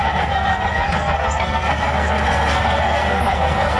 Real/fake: fake